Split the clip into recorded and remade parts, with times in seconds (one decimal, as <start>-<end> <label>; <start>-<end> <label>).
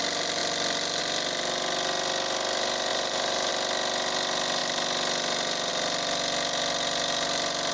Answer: 0.0-2.9 recorded; 2.9-3.5 remade; 3.5-7.7 recorded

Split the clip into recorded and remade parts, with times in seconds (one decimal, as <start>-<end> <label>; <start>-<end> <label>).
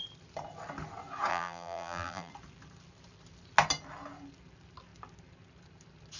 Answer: 0.0-1.3 recorded; 1.3-2.3 remade; 2.3-6.2 recorded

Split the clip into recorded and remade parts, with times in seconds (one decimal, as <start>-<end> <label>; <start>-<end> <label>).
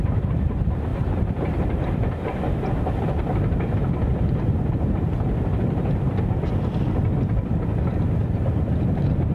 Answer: 0.0-0.9 recorded; 0.9-2.4 remade; 2.4-4.1 recorded; 4.1-6.1 remade; 6.1-8.2 recorded; 8.2-8.8 remade; 8.8-9.3 recorded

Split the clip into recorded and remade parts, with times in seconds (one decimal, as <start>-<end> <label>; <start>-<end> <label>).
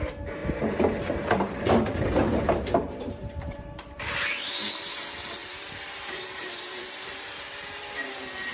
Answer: 0.0-0.4 recorded; 0.4-4.5 remade; 4.5-5.4 recorded; 5.4-8.5 remade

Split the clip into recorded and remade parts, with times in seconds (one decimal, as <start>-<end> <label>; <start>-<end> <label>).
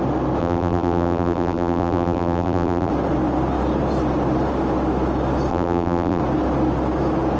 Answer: 0.0-0.4 recorded; 0.4-2.9 remade; 2.9-5.5 recorded; 5.5-6.2 remade; 6.2-7.4 recorded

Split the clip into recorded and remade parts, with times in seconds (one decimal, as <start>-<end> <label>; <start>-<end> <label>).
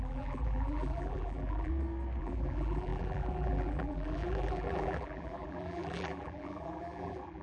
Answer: 0.0-1.7 remade; 1.7-2.2 recorded; 2.2-7.4 remade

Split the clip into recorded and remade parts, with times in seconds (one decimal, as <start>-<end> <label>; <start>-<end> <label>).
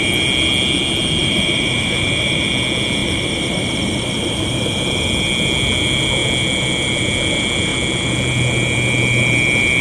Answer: 0.0-1.2 recorded; 1.2-2.5 remade; 2.5-3.0 recorded; 3.0-4.4 remade; 4.4-9.8 recorded